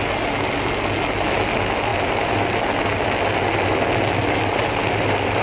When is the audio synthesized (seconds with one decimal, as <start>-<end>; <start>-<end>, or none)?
4.2-5.4